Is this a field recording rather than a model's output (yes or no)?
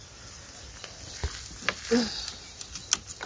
yes